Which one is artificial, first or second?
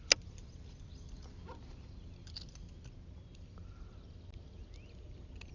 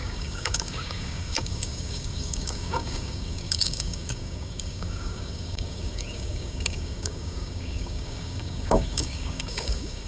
second